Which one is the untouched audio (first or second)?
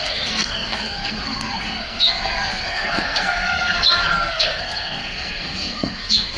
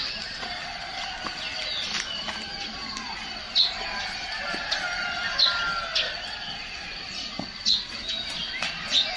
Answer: second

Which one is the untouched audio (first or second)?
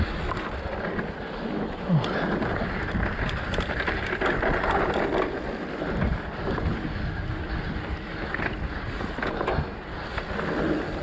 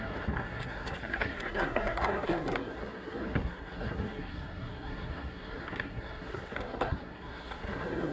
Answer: first